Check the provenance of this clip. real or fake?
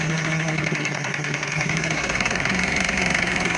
fake